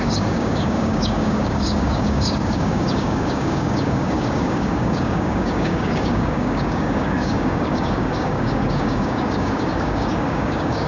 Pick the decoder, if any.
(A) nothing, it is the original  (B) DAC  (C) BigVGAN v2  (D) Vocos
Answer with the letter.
B